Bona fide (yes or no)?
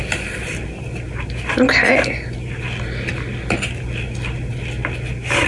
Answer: yes